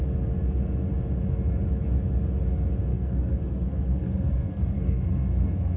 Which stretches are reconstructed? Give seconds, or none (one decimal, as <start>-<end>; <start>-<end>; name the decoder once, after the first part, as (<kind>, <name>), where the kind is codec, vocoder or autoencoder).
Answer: 2.9-5.8 (codec, SNAC)